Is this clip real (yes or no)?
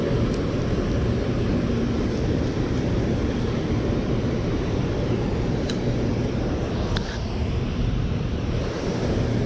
no